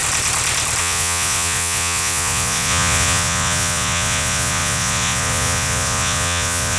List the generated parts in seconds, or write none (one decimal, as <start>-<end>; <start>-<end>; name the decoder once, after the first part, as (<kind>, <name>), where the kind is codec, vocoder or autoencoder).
0.8-6.8 (vocoder, Vocos)